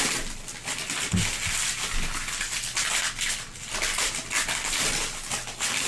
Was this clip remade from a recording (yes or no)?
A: no